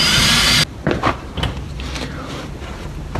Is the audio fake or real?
real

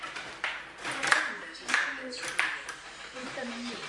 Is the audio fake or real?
fake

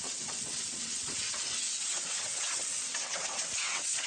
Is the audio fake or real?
fake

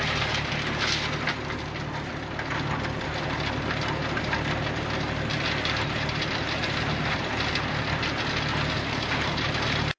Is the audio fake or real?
real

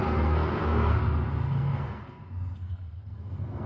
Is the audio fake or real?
fake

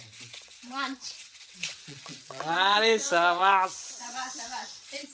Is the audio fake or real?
fake